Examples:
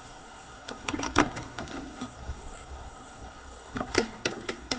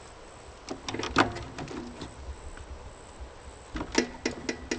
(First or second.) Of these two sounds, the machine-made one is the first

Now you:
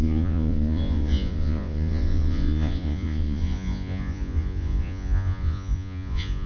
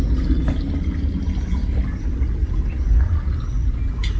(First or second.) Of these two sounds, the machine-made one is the first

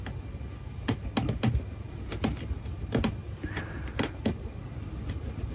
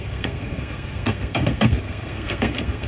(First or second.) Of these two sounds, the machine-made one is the second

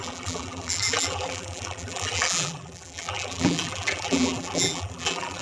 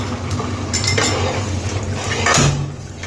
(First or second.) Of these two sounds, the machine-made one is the first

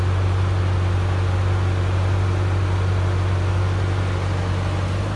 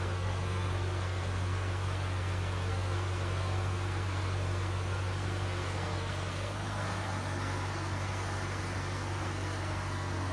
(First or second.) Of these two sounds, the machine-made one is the second